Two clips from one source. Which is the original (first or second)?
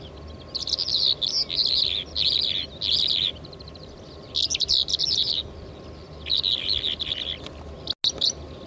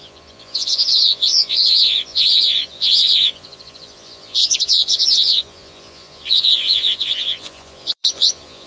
first